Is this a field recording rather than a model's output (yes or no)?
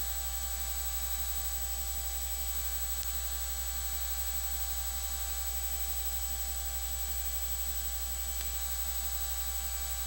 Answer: yes